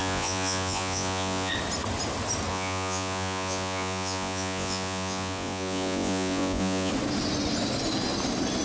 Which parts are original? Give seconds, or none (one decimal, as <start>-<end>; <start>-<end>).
1.5-2.5; 6.9-8.6